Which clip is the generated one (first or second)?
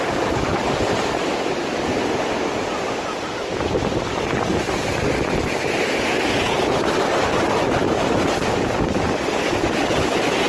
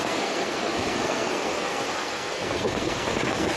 second